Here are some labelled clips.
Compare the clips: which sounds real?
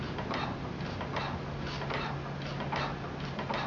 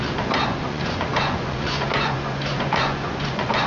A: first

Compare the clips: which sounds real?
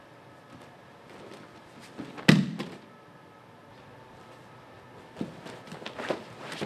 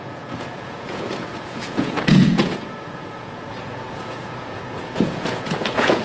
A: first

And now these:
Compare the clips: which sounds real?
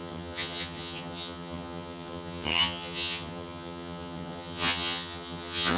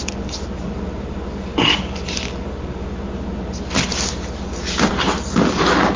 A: second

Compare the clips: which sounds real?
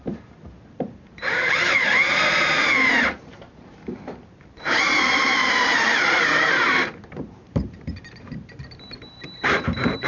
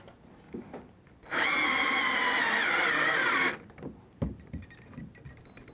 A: second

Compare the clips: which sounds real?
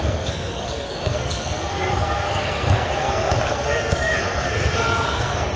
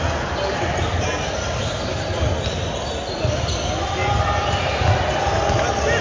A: second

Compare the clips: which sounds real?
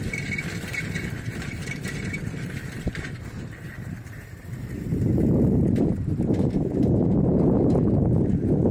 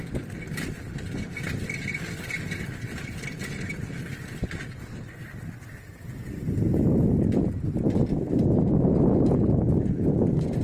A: second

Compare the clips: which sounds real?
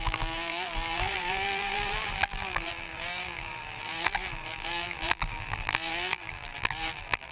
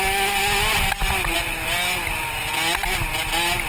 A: second